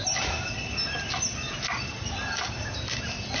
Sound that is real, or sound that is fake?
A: real